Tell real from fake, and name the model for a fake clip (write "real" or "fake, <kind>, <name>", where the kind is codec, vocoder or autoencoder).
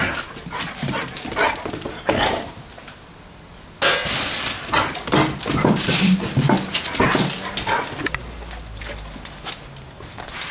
real